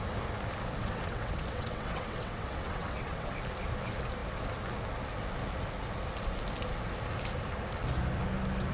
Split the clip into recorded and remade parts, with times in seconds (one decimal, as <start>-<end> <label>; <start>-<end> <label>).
0.0-0.8 recorded; 0.8-3.3 remade; 3.3-8.7 recorded

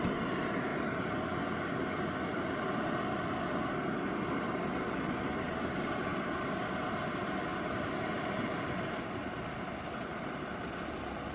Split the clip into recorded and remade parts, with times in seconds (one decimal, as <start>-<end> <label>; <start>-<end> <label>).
0.0-11.3 recorded

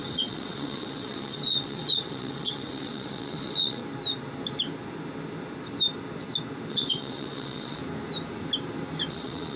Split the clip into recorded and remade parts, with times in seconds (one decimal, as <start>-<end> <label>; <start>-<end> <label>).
0.0-3.8 remade; 3.8-6.7 recorded; 6.7-7.8 remade; 7.8-9.1 recorded; 9.1-9.6 remade

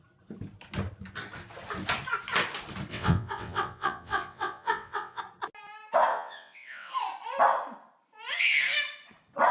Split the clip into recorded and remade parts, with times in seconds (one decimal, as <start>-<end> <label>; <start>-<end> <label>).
0.0-2.9 recorded; 2.9-5.2 remade; 5.2-6.1 recorded; 6.1-6.9 remade; 6.9-9.5 recorded

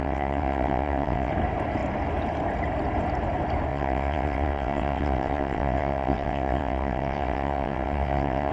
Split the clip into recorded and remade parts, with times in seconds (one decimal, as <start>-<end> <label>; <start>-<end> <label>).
0.0-1.3 remade; 1.3-3.7 recorded; 3.7-8.5 remade

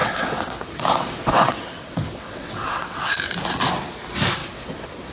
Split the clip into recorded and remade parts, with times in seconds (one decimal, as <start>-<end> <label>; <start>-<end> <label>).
0.0-3.1 remade; 3.1-4.4 recorded; 4.4-5.1 remade

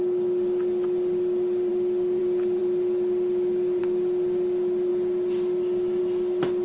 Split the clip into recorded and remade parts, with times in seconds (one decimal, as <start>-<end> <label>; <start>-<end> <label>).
0.0-6.6 recorded